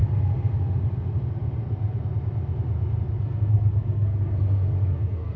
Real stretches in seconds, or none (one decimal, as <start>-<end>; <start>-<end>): 0.0-3.2